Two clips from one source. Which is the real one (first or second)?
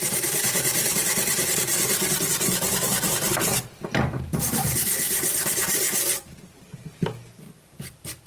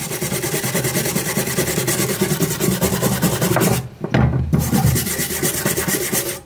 second